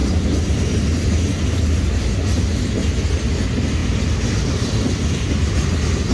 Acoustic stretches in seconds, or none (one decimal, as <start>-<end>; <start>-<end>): 0.0-3.8